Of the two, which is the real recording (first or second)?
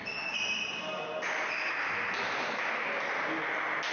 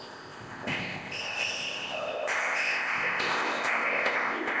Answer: first